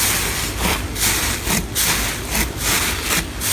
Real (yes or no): yes